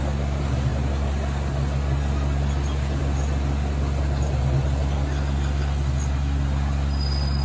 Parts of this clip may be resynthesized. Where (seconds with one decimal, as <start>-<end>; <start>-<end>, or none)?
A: none